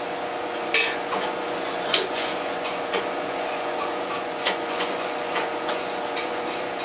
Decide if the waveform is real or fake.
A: fake